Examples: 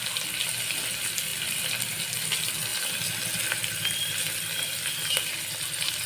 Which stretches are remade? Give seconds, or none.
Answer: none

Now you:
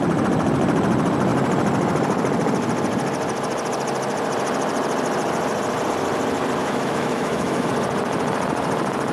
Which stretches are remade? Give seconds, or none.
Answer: 6.6-7.7 (autoencoder, DAC-VAE)

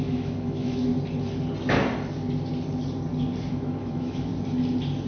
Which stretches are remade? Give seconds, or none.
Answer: 0.0-0.9 (autoencoder, DAC-VAE); 3.5-4.3